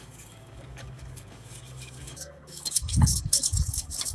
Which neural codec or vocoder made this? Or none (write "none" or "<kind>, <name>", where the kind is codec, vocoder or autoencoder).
codec, DAC